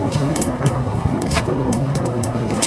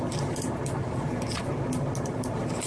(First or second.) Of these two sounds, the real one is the second